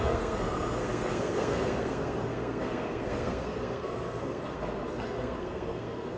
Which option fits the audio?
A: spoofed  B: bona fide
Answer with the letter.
A